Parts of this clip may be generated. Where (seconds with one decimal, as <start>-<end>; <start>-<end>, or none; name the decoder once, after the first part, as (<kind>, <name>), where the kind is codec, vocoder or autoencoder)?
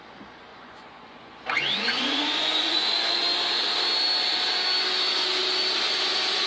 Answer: 0.5-3.2 (vocoder, Vocos)